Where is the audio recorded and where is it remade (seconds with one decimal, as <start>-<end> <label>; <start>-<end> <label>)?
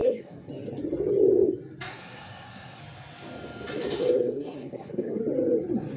0.0-0.5 remade; 0.5-1.9 recorded; 1.9-2.8 remade; 2.8-4.0 recorded; 4.0-5.2 remade; 5.2-6.0 recorded